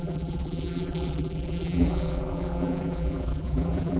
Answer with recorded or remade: remade